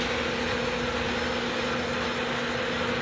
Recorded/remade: recorded